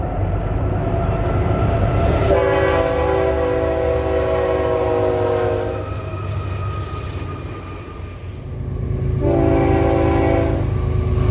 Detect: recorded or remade recorded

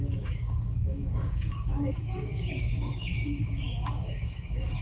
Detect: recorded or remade remade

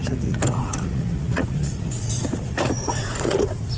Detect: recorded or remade remade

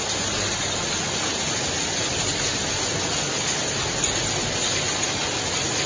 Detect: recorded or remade recorded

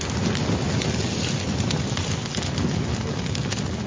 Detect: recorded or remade recorded